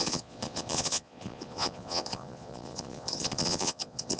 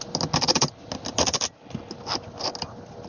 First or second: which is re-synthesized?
first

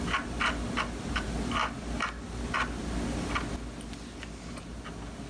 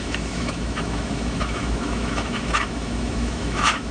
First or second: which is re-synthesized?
second